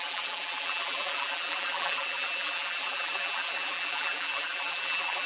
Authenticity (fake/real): fake